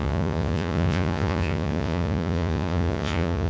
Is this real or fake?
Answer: fake